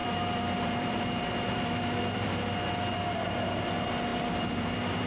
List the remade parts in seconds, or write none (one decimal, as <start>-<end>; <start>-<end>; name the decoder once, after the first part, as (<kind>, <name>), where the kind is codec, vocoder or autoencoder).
0.0-2.3 (vocoder, BigVGAN v2); 4.1-5.1